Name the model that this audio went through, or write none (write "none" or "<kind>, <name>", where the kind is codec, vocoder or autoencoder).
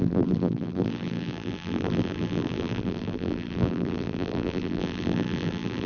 vocoder, BigVGAN v2